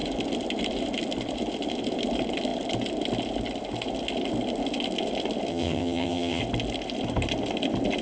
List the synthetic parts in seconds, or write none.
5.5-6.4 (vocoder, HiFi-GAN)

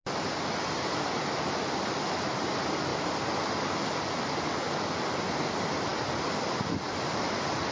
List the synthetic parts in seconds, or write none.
none

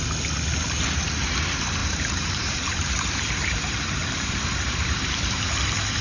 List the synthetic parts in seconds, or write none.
1.8-5.4 (vocoder, BigVGAN v2)

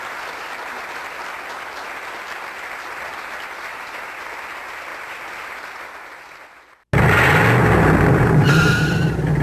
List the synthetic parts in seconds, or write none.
none

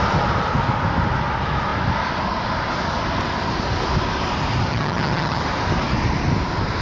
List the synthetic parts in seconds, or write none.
4.7-5.4 (vocoder, HiFi-GAN)

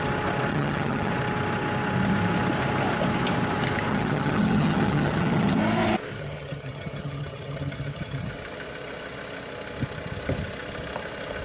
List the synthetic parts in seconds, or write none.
0.5-1.1 (vocoder, HiFi-GAN); 3.9-5.6; 6.1-8.3

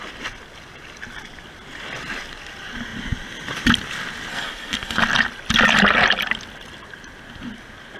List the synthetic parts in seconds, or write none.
4.3-5.0 (codec, SNAC)